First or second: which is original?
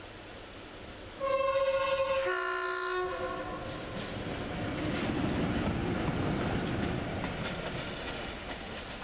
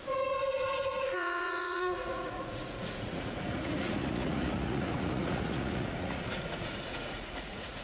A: first